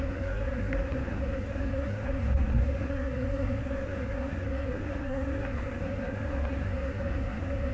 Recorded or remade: remade